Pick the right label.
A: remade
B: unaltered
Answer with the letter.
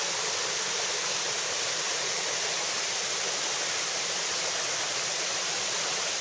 B